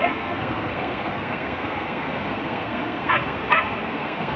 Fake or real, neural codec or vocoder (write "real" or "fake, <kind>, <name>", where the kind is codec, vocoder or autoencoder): fake, codec, SNAC